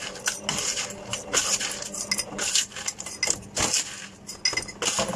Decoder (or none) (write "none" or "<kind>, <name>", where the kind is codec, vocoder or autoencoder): none